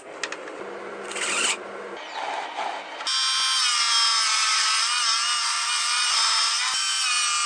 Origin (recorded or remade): recorded